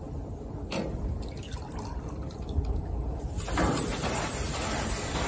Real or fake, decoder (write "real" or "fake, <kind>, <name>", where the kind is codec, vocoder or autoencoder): real